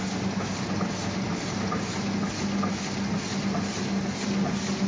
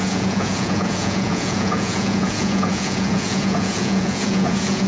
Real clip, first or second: first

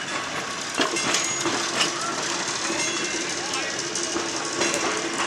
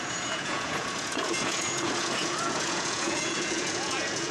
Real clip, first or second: first